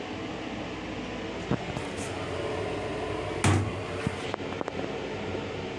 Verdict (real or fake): real